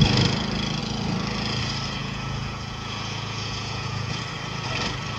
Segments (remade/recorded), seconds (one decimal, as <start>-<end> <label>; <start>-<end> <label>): 0.0-2.0 recorded; 2.0-4.2 remade; 4.2-5.2 recorded